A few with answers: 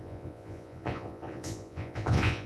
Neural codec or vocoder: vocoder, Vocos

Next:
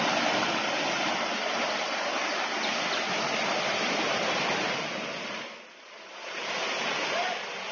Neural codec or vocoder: none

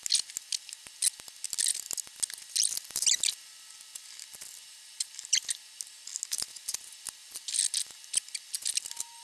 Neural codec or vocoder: none